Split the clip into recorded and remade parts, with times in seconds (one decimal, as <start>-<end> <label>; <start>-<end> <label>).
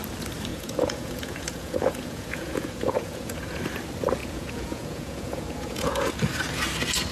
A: 0.0-0.5 recorded; 0.5-3.6 remade; 3.6-4.2 recorded; 4.2-6.1 remade; 6.1-7.1 recorded